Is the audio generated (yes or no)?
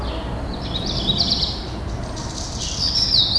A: no